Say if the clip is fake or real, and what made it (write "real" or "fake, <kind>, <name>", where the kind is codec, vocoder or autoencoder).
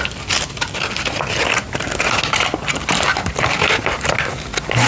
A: real